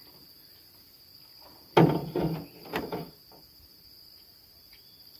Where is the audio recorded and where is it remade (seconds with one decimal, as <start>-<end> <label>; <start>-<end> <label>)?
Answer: 0.0-5.2 recorded

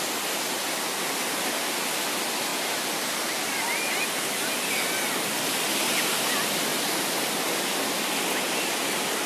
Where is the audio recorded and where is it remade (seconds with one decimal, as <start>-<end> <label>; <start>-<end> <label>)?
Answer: 0.0-9.3 recorded